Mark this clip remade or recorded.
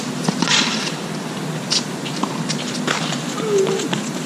recorded